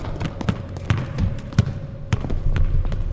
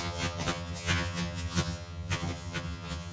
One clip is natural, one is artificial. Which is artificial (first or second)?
second